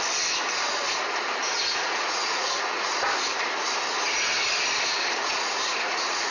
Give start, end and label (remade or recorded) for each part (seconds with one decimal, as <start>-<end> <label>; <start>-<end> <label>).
0.0-1.4 recorded; 1.4-2.9 remade; 2.9-5.2 recorded; 5.2-6.3 remade